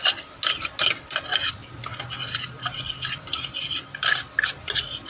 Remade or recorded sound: recorded